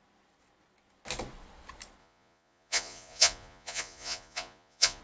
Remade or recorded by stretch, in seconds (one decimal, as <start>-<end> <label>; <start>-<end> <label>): 0.0-2.0 recorded; 2.0-5.0 remade